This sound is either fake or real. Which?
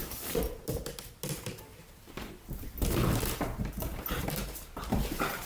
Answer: real